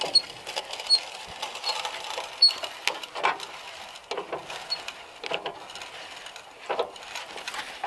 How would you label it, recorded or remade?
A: recorded